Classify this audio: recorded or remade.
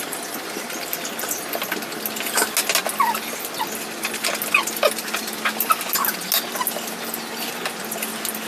recorded